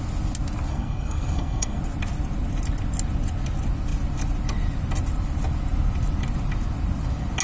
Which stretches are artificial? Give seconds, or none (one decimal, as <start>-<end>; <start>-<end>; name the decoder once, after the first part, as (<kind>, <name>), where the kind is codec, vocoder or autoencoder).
0.7-1.8 (codec, SNAC)

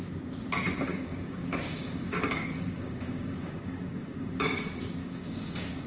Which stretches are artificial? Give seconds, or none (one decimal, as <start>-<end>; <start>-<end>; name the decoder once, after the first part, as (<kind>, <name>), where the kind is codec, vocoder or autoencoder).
0.9-4.4 (codec, DAC); 5.0-5.9

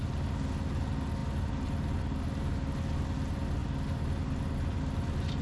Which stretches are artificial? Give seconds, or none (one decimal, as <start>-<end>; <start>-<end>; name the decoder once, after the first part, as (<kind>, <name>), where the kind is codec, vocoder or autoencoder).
none

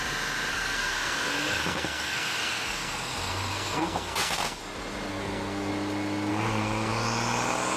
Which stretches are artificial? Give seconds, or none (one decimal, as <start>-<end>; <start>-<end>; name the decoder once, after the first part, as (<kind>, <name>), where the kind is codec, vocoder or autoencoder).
0.5-4.6 (codec, SNAC); 5.1-5.7; 6.3-6.9

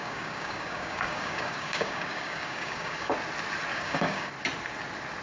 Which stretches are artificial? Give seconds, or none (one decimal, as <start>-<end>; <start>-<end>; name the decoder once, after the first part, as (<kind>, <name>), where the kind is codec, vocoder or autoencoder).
0.0-3.1 (codec, DAC); 3.7-4.3

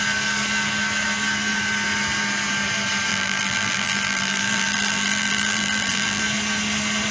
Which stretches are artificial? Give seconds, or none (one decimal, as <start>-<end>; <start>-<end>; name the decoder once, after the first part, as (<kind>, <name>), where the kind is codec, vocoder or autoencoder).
3.1-6.2 (vocoder, BigVGAN v2)